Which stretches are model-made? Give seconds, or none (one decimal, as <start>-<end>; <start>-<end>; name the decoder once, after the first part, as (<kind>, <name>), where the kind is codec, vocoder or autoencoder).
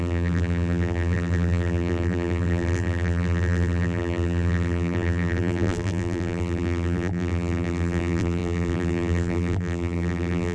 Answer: 0.0-10.5 (vocoder, BigVGAN v2)